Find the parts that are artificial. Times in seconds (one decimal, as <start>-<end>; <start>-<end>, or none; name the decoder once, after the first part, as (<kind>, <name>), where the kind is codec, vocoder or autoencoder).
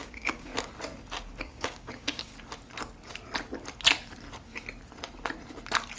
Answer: 0.0-0.5 (codec, DAC); 1.4-2.3